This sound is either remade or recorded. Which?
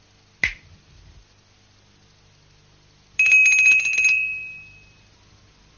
recorded